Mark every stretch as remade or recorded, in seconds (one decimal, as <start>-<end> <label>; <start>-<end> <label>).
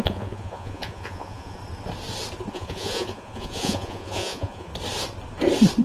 0.0-1.6 remade; 1.6-2.5 recorded; 2.5-4.7 remade; 4.7-5.8 recorded